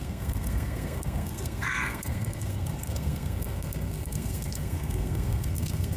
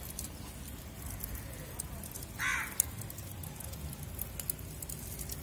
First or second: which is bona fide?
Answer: second